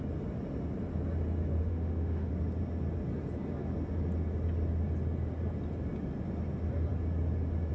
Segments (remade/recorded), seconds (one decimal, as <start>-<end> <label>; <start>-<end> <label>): 0.0-1.7 recorded; 1.7-2.3 remade; 2.3-7.7 recorded